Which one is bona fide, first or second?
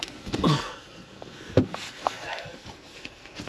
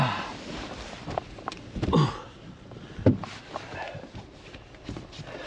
second